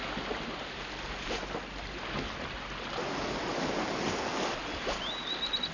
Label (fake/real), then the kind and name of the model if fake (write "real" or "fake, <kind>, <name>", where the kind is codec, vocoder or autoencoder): real